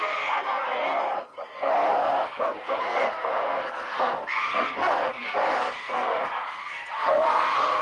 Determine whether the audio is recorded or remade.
remade